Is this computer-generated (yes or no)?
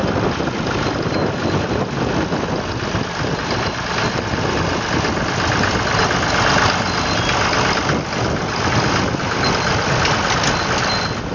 no